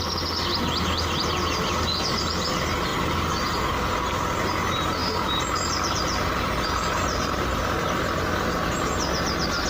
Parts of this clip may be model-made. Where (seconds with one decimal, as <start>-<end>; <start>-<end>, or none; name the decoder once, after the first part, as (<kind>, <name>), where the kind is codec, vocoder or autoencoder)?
2.9-3.7 (vocoder, BigVGAN v2); 5.0-7.6

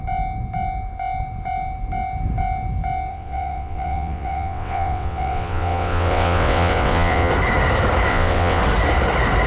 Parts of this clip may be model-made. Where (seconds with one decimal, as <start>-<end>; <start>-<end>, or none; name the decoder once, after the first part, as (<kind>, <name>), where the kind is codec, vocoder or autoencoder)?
3.1-7.3 (vocoder, WaveNeXt); 8.1-8.6

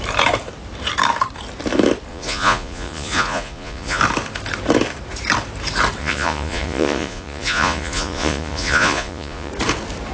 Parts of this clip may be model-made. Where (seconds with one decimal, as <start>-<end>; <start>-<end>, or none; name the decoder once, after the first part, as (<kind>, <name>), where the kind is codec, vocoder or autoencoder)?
2.1-4.0 (vocoder, Vocos); 6.0-9.5

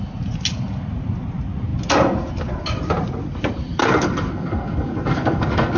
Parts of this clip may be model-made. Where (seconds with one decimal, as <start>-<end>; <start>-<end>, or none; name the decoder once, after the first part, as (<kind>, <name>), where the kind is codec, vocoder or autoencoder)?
3.8-5.8 (codec, SNAC)

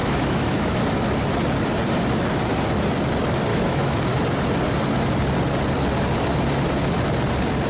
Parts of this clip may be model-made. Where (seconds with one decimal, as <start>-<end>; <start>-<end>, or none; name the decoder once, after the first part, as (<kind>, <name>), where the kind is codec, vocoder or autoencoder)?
0.0-0.8 (autoencoder, DAC-VAE); 3.5-4.0

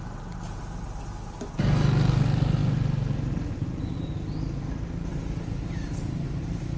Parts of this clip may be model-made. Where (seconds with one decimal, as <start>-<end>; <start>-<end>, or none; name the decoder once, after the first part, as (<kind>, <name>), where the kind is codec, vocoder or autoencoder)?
none